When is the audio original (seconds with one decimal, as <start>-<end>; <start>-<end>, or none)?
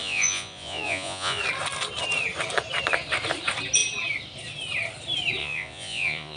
1.4-5.4